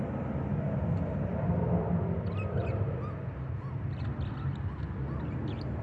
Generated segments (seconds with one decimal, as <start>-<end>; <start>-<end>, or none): none